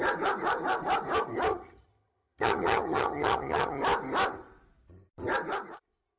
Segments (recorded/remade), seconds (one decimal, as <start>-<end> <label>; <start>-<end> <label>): 0.0-1.5 recorded; 1.5-3.8 remade; 3.8-6.2 recorded

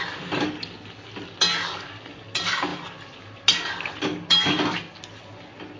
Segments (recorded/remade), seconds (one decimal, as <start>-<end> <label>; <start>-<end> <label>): 0.0-5.8 recorded